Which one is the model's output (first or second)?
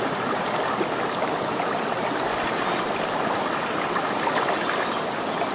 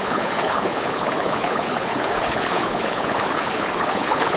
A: second